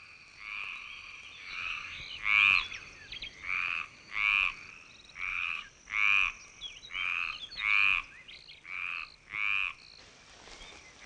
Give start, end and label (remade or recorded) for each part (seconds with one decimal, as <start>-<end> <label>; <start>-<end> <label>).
0.0-1.4 recorded; 1.4-2.0 remade; 2.0-5.3 recorded; 5.3-5.8 remade; 5.8-11.1 recorded